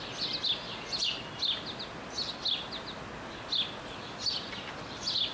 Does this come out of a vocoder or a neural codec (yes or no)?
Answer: no